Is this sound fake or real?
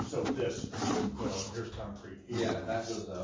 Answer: real